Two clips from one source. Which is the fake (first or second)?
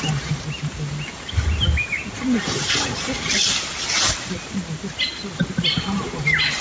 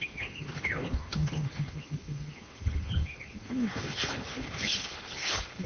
second